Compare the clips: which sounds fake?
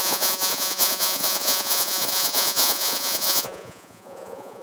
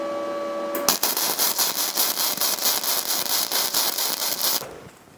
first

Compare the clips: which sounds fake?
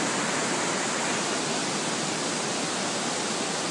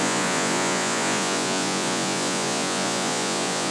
second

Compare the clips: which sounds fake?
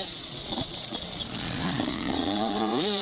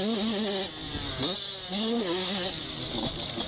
first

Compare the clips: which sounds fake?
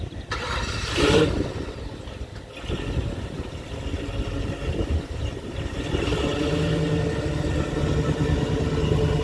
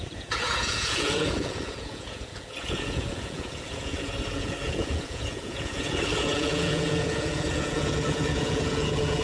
second